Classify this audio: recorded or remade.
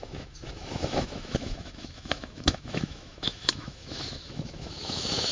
remade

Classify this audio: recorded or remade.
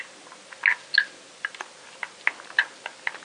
recorded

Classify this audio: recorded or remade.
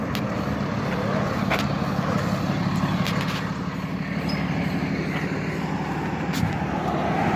recorded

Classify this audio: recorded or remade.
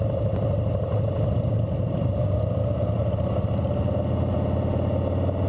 recorded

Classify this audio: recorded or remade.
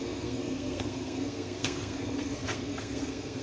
remade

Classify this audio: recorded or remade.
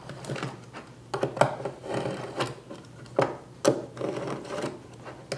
recorded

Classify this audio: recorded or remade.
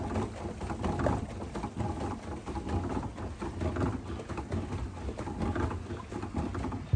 recorded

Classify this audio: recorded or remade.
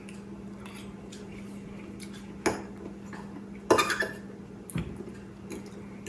recorded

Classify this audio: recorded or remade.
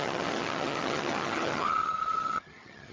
remade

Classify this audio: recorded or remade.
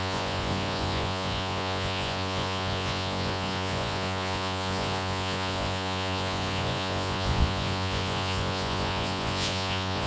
remade